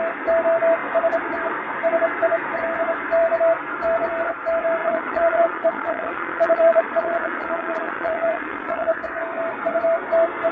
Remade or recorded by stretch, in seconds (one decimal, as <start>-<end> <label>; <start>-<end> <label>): 0.0-4.8 recorded; 4.8-9.0 remade; 9.0-10.5 recorded